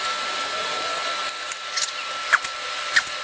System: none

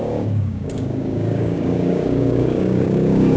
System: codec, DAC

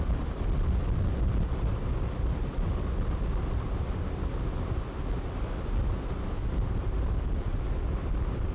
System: none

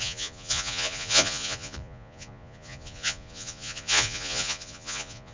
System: vocoder, Vocos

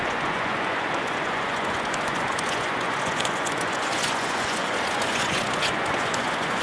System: vocoder, Vocos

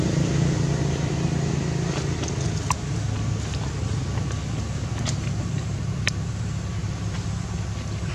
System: none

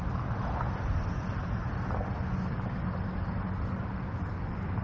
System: none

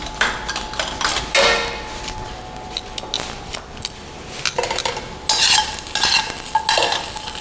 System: none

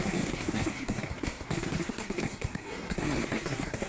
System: codec, SNAC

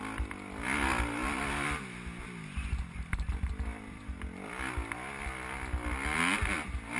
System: none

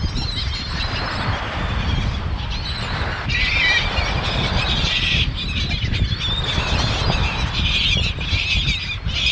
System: none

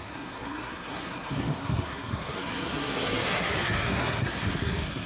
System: codec, SNAC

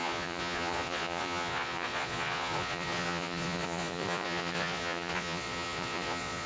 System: vocoder, Vocos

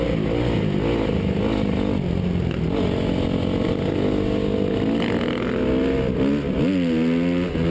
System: none